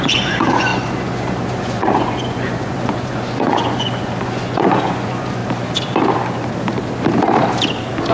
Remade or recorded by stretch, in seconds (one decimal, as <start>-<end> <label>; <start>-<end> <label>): 0.0-5.4 remade; 5.4-8.1 recorded